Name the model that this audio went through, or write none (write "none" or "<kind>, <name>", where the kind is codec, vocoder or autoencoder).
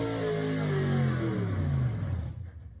none